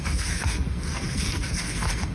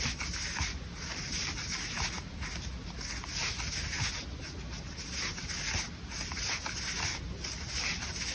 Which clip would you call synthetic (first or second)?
first